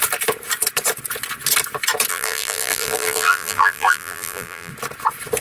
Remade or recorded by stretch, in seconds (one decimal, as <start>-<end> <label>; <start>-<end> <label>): 0.0-2.1 recorded; 2.1-4.7 remade; 4.7-5.4 recorded